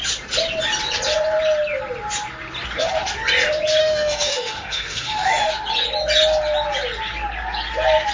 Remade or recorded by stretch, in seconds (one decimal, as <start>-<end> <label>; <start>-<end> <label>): 0.0-3.8 recorded; 3.8-5.5 remade; 5.5-8.1 recorded